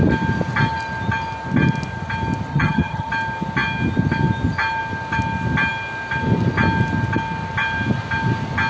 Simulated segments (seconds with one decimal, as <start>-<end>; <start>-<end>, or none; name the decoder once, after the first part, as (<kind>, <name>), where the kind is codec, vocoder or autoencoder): 2.5-3.1 (vocoder, HiFi-GAN)